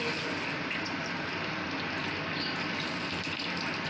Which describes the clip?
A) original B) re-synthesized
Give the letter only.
A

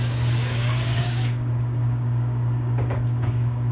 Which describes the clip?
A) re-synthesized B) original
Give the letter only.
A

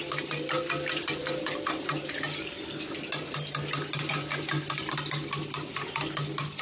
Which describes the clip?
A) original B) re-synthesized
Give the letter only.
A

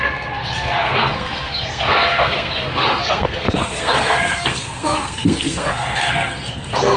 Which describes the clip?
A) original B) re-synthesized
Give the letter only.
B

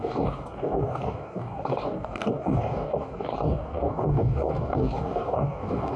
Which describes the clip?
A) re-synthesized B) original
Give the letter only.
A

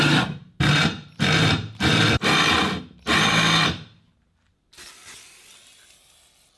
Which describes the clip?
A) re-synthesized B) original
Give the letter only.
B